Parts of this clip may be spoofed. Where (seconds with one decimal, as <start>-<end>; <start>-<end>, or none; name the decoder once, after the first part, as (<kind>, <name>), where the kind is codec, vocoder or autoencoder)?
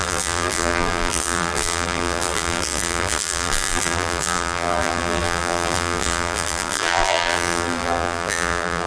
0.0-8.9 (vocoder, BigVGAN v2)